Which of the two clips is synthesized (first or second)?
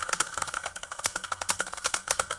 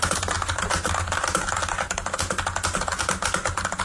first